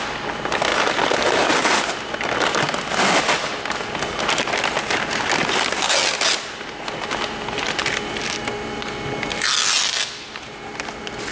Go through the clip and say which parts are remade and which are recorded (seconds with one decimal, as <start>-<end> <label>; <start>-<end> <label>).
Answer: 0.0-11.3 recorded